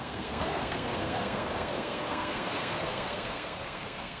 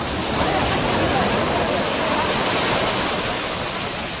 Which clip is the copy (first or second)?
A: first